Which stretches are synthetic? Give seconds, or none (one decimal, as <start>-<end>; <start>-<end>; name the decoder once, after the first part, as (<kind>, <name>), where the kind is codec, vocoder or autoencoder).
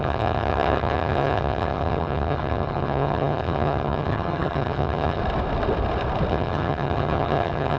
0.0-5.2 (vocoder, HiFi-GAN); 6.3-7.8